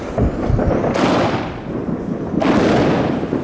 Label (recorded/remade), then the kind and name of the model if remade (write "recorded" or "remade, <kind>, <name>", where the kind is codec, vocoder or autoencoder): recorded